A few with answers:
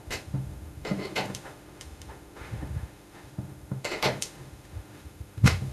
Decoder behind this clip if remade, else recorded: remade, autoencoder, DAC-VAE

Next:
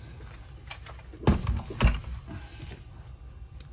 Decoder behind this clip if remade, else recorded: recorded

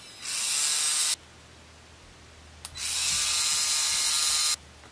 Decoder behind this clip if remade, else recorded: recorded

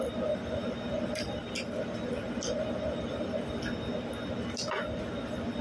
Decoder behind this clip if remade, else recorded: recorded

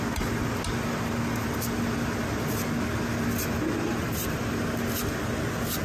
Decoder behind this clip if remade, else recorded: recorded